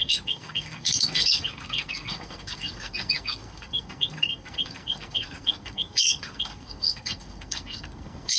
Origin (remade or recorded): remade